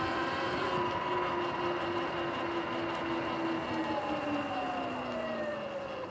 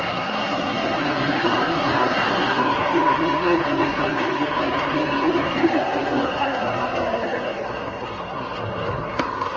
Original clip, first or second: first